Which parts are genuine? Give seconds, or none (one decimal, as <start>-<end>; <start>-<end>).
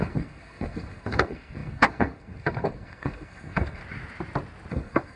3.8-4.7